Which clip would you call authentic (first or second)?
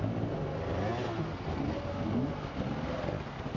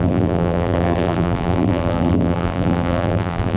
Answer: first